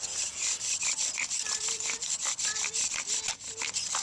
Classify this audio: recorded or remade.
remade